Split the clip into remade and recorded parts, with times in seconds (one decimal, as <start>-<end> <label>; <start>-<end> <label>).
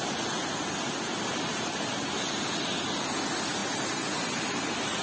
0.0-5.0 recorded